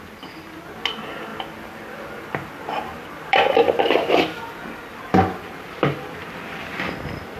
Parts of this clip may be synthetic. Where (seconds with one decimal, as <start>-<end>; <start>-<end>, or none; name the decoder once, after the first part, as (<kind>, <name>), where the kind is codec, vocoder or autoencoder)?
1.3-3.6 (vocoder, BigVGAN v2); 6.2-7.4